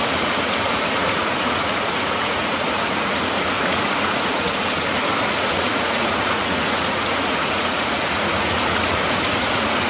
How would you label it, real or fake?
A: fake